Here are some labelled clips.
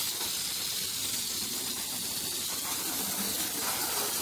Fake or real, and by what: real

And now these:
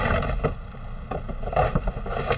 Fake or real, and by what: real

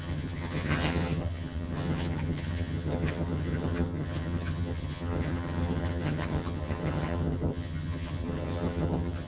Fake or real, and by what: fake, vocoder, HiFi-GAN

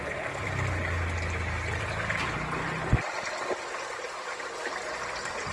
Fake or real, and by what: real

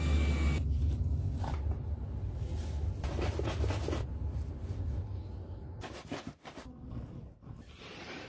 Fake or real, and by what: real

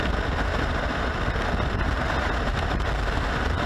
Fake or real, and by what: real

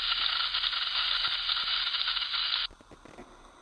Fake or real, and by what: real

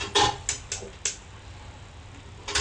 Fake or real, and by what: real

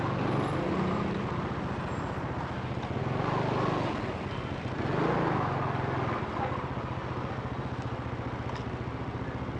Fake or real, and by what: real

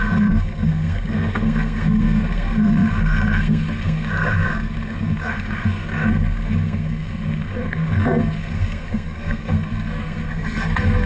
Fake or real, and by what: fake, codec, SNAC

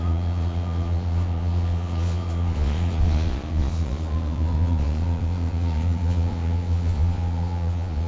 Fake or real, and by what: fake, vocoder, Vocos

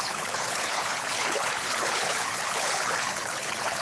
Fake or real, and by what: fake, codec, HILCodec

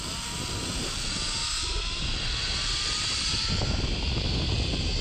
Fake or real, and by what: real